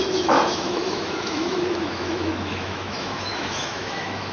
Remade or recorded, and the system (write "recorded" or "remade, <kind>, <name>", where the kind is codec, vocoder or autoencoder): remade, autoencoder, DAC-VAE